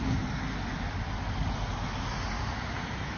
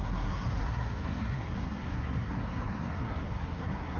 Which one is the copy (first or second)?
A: second